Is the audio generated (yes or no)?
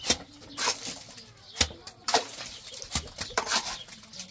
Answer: no